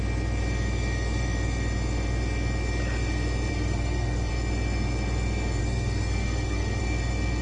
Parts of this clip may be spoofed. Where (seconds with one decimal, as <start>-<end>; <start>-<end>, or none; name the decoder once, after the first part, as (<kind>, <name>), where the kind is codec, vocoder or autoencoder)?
3.5-4.3 (codec, SNAC); 5.6-6.8